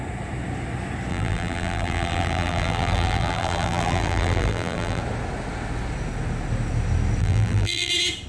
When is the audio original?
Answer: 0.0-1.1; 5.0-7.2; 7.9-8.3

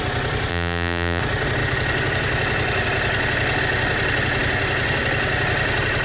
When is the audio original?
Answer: 0.0-0.5; 1.2-6.0

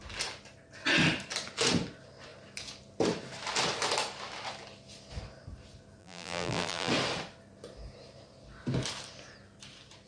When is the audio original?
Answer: 0.0-6.0; 6.9-10.1